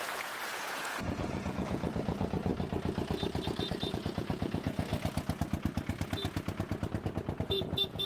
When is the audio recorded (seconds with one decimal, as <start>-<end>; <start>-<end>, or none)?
2.5-3.9; 4.9-7.5